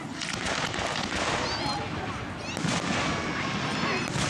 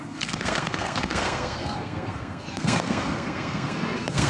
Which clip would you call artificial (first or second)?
second